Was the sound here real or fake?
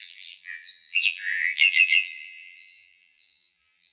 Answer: fake